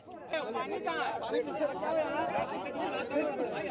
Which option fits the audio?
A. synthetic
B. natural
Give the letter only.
B